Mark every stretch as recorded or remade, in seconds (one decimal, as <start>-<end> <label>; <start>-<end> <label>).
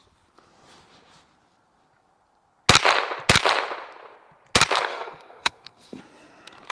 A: 0.0-4.9 recorded; 4.9-6.0 remade; 6.0-6.7 recorded